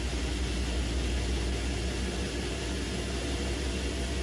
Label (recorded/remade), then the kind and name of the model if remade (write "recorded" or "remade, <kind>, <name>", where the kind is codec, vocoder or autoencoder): recorded